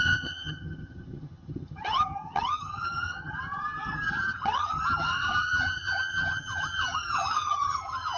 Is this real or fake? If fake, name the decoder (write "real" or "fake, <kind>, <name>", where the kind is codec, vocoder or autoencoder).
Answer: fake, vocoder, HiFi-GAN